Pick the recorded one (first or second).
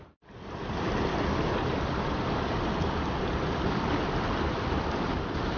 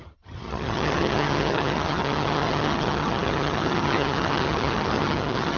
first